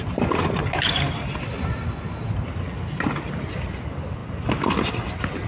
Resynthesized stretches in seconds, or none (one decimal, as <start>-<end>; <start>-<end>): none

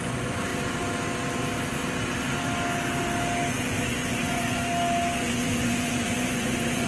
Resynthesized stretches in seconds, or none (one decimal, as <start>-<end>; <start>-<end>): 0.0-0.5; 3.5-4.6; 5.2-6.9

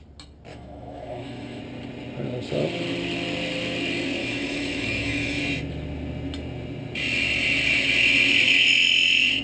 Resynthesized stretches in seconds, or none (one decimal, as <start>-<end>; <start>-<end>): 0.5-1.6; 4.2-5.4

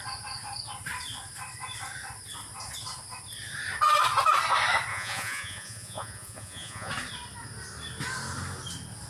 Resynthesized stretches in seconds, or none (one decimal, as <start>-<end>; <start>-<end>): 4.9-6.9

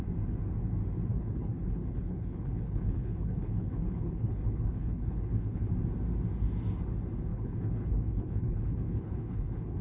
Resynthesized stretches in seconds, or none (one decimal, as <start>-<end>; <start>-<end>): 1.1-5.7; 7.3-9.8

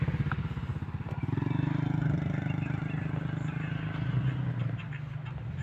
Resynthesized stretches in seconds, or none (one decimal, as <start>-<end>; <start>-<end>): none